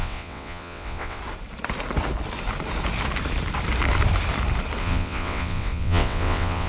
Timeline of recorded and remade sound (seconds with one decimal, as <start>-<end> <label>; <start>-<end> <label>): 0.0-1.2 remade; 1.2-4.8 recorded; 4.8-6.7 remade